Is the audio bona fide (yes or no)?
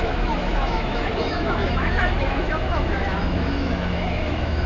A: no